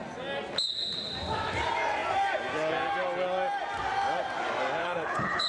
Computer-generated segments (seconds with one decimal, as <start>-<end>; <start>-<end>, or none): 4.8-5.5